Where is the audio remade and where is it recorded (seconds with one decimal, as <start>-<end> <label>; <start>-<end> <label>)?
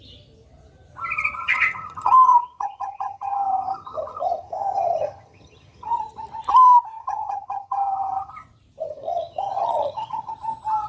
0.0-1.4 recorded; 1.4-6.0 remade; 6.0-7.0 recorded; 7.0-8.3 remade; 8.3-8.9 recorded; 8.9-10.3 remade; 10.3-10.9 recorded